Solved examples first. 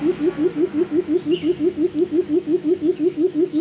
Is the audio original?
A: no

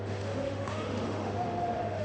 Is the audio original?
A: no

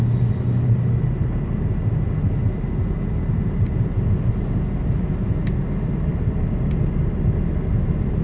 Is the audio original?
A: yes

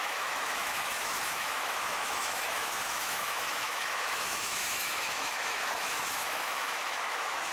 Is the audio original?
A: no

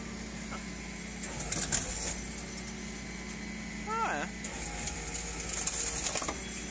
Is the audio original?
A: yes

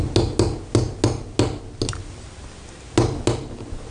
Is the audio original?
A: yes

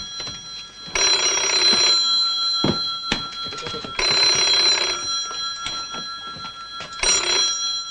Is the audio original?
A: yes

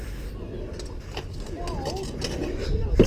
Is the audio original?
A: yes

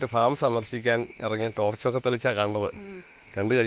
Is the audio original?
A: no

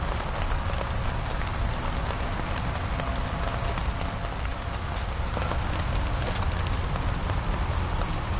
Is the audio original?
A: yes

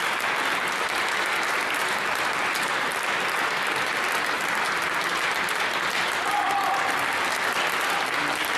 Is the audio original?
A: yes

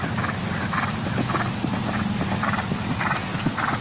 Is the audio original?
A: yes